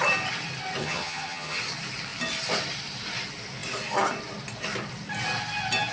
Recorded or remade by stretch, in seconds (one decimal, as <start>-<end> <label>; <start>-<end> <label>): 0.0-0.8 recorded; 0.8-1.6 remade; 1.6-5.9 recorded